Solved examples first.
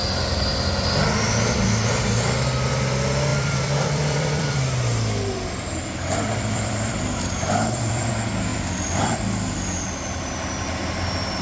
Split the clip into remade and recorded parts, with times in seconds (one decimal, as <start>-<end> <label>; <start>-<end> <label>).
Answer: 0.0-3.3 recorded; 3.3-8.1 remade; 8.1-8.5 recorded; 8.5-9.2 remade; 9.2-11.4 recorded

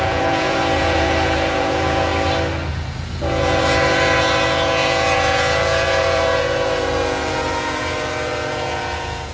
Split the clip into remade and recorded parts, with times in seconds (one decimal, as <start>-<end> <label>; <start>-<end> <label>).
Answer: 0.0-2.1 remade; 2.1-2.7 recorded; 2.7-9.3 remade

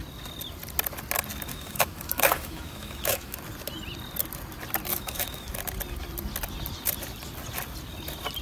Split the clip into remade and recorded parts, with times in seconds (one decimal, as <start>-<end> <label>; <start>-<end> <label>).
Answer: 0.0-1.5 recorded; 1.5-3.4 remade; 3.4-4.9 recorded; 4.9-5.5 remade; 5.5-8.4 recorded

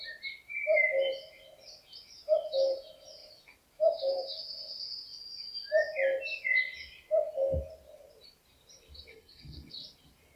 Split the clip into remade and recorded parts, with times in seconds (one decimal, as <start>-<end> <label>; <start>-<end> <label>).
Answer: 0.0-9.1 recorded; 9.1-9.7 remade; 9.7-10.4 recorded